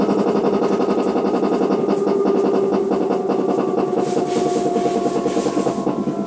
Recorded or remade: recorded